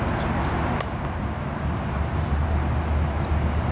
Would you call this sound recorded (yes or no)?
yes